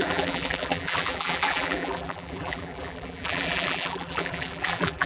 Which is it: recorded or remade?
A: remade